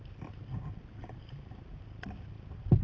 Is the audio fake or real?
real